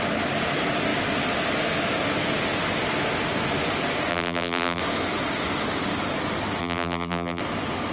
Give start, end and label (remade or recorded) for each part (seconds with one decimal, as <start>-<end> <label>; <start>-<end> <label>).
0.0-4.1 recorded; 4.1-4.8 remade; 4.8-6.6 recorded; 6.6-7.4 remade; 7.4-7.9 recorded